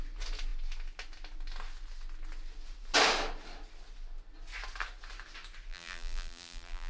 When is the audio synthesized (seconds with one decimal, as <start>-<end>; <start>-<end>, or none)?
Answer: 5.7-6.9